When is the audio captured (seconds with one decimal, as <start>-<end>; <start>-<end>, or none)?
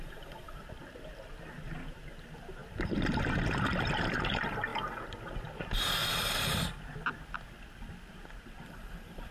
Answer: 2.6-3.8; 4.7-8.1